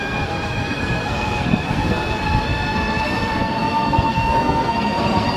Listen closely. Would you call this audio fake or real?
fake